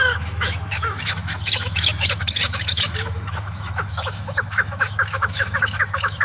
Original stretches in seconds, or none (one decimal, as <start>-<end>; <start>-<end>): none